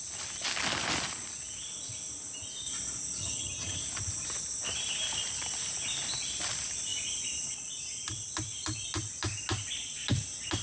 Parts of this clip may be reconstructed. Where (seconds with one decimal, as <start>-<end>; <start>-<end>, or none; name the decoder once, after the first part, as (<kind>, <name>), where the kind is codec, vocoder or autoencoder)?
3.2-3.8 (vocoder, HiFi-GAN)